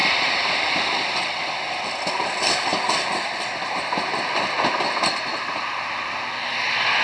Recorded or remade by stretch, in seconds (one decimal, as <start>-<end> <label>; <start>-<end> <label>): 0.0-2.1 remade; 2.1-7.0 recorded